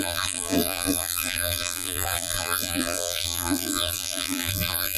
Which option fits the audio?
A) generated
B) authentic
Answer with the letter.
A